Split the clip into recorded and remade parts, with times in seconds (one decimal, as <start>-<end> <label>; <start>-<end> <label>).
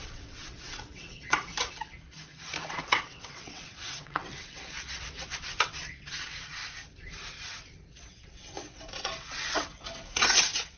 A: 0.0-1.5 remade; 1.5-2.7 recorded; 2.7-6.6 remade; 6.6-7.9 recorded; 7.9-10.8 remade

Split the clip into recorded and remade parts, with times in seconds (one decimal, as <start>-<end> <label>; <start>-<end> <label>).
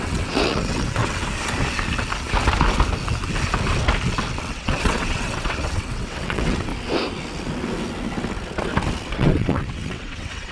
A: 0.0-1.0 remade; 1.0-4.5 recorded; 4.5-6.7 remade; 6.7-9.1 recorded; 9.1-10.5 remade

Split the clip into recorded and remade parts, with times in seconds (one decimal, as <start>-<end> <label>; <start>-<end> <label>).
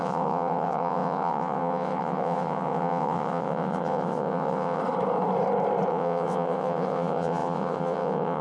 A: 0.0-4.8 remade; 4.8-5.9 recorded; 5.9-8.4 remade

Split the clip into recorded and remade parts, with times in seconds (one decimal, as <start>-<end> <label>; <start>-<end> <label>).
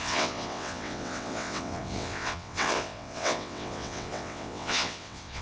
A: 0.0-5.4 remade